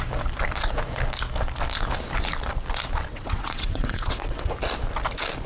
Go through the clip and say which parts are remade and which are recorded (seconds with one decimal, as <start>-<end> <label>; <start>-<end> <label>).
0.0-3.1 recorded; 3.1-4.5 remade; 4.5-5.5 recorded

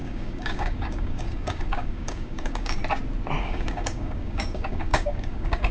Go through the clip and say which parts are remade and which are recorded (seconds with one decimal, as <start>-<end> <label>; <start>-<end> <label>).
0.0-2.8 remade; 2.8-3.4 recorded; 3.4-5.7 remade

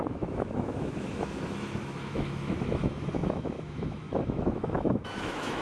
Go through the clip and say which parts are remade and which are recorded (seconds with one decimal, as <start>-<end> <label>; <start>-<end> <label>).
0.0-5.6 remade

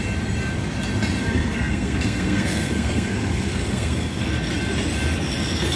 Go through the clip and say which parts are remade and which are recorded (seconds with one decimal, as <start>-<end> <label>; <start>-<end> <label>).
0.0-1.2 recorded; 1.2-4.3 remade; 4.3-5.8 recorded

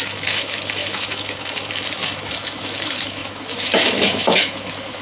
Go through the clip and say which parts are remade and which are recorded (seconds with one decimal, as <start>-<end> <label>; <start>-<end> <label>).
0.0-5.0 remade